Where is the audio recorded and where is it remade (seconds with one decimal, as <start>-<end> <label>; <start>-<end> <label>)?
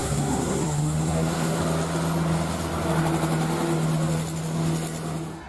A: 0.0-1.6 remade; 1.6-5.5 recorded